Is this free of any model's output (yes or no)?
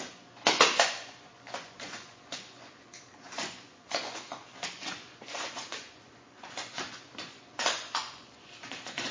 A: no